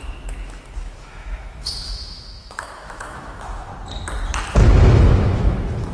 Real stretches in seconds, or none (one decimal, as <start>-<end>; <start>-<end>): 3.7-4.8